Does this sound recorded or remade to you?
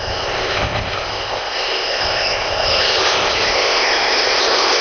remade